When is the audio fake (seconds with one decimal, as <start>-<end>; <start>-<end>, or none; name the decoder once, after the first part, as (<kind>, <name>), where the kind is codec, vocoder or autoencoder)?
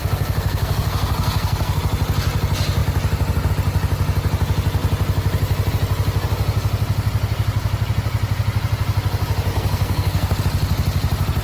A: 0.0-1.8 (codec, SNAC); 9.5-10.4